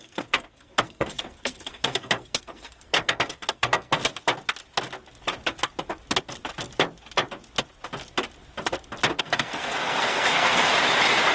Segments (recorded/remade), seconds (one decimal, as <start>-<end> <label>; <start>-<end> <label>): 0.0-4.0 remade; 4.0-9.2 recorded; 9.2-10.7 remade; 10.7-11.3 recorded